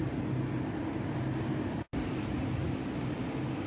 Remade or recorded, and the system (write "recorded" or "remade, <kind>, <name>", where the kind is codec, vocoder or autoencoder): recorded